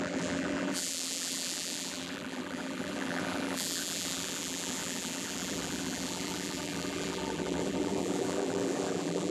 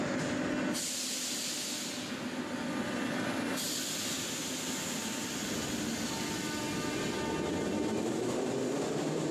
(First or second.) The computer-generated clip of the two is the first